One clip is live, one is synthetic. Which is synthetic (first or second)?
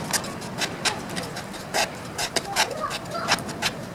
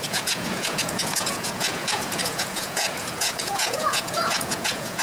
second